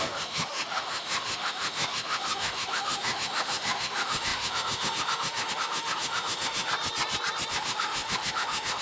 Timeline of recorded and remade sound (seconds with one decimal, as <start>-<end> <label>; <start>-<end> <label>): 0.0-6.7 remade; 6.7-7.5 recorded; 7.5-8.8 remade